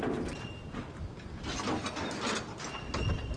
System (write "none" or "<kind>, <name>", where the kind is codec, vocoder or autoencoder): none